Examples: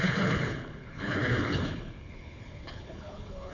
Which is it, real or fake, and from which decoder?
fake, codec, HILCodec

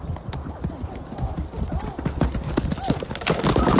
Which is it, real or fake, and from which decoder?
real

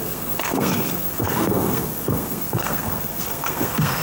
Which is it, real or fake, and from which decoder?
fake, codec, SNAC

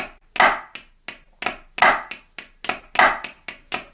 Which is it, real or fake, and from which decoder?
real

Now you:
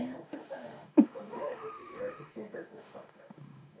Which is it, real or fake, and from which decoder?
fake, autoencoder, DAC-VAE